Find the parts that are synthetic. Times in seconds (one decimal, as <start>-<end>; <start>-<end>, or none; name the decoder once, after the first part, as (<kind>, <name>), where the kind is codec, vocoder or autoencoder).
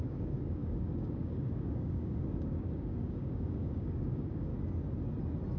0.0-4.5 (codec, DAC)